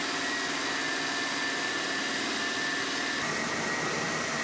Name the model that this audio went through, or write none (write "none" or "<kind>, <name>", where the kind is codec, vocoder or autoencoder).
none